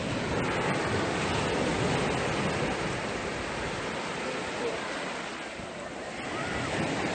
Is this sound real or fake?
real